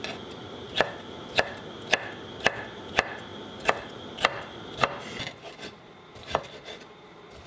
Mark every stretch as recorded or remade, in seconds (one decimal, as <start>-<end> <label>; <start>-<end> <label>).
0.0-7.5 recorded